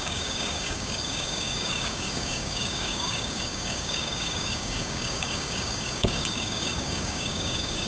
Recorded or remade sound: remade